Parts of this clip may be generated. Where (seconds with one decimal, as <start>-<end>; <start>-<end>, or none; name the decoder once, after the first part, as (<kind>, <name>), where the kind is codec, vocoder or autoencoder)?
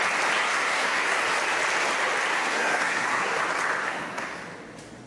0.4-1.2 (codec, SNAC); 2.3-3.4; 3.8-4.4